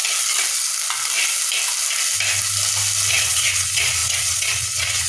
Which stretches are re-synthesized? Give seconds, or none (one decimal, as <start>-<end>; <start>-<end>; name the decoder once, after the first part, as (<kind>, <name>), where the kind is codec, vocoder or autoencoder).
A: 3.1-5.1 (vocoder, Vocos)